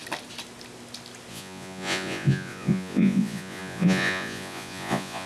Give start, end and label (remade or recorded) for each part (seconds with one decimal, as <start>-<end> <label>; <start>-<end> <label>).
0.0-1.3 recorded; 1.3-5.3 remade